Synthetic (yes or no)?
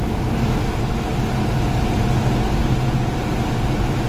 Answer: no